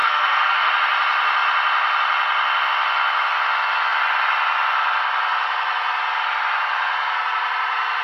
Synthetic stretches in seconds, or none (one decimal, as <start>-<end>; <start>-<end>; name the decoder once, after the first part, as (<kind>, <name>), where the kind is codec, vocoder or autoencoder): 0.0-0.7 (codec, SNAC)